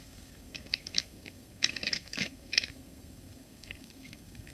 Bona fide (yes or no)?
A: no